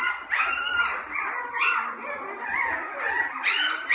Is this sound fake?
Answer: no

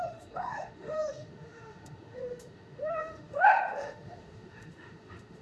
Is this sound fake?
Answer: yes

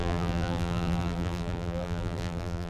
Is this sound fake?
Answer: yes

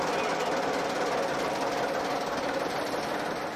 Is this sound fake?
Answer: no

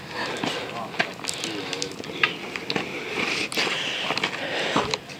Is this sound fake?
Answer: no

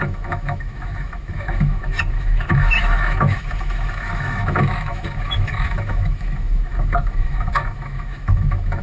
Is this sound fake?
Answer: yes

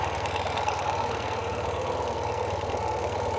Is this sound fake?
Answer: yes